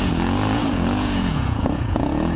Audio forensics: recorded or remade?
remade